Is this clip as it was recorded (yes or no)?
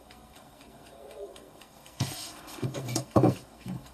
no